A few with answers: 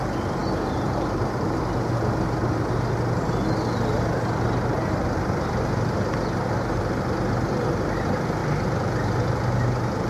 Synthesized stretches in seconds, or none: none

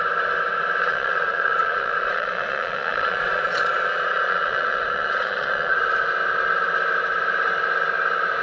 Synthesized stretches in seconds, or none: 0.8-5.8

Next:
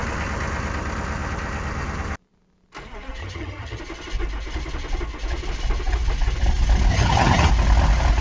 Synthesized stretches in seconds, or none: 3.2-3.8; 6.9-7.5

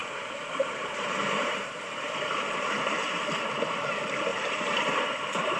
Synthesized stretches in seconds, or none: 0.0-3.2; 4.3-5.6

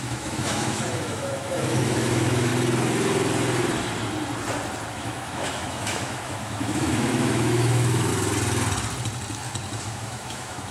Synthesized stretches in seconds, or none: 0.0-2.5; 4.9-8.1; 9.8-10.7

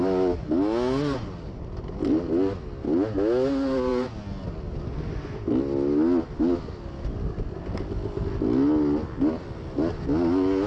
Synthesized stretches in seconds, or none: none

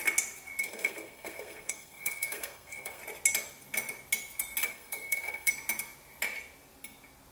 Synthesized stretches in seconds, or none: 0.6-3.0; 4.6-5.5